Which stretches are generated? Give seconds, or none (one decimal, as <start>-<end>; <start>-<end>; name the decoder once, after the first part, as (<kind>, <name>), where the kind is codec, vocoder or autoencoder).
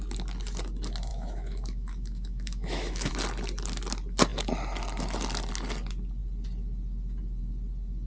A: 1.1-3.1 (autoencoder, DAC-VAE)